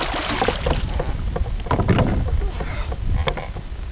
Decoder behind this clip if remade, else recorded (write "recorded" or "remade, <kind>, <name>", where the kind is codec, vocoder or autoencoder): recorded